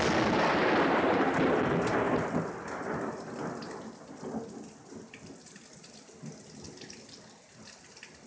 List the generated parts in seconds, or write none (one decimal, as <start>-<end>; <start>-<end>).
none